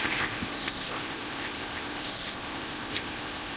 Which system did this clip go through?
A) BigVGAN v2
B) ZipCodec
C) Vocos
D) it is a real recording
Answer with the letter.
B